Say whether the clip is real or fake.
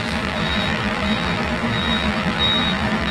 fake